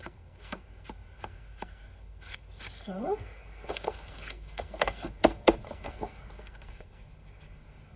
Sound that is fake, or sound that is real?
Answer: fake